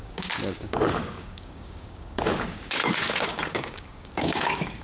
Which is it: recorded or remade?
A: remade